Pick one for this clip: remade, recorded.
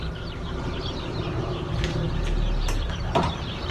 remade